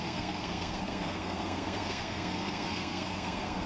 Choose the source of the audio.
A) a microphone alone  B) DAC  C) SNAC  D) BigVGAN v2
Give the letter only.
C